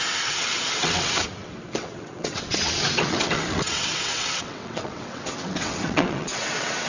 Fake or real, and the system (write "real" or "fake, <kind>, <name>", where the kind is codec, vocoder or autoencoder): fake, vocoder, WaveNeXt